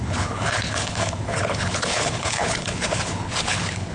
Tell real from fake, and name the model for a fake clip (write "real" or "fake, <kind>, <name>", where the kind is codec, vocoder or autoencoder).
fake, codec, HILCodec